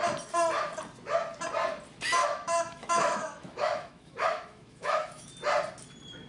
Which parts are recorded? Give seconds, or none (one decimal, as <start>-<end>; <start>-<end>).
0.0-2.2; 5.3-6.3